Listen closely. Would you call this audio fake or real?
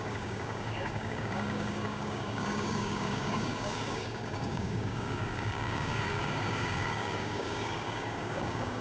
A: fake